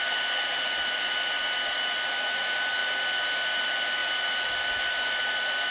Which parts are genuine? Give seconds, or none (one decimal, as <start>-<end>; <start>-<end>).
0.0-5.7